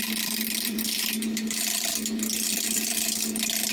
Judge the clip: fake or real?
fake